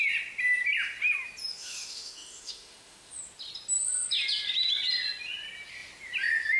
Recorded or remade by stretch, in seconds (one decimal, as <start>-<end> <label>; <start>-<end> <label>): 0.0-1.5 recorded; 1.5-3.1 remade; 3.1-6.6 recorded